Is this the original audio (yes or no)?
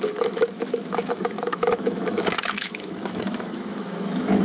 no